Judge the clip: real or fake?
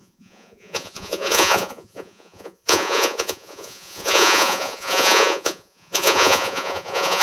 fake